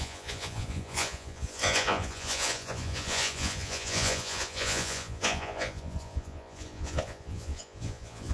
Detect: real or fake fake